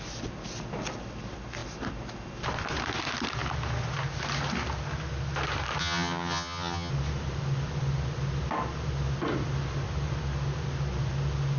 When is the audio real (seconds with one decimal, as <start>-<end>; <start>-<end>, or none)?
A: 0.0-5.8; 6.9-11.6